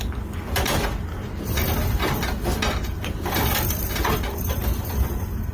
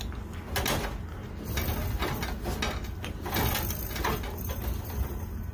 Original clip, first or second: second